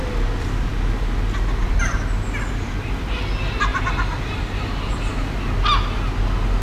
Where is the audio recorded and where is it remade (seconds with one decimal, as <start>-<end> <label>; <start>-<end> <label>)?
0.0-3.7 recorded; 3.7-5.0 remade; 5.0-6.6 recorded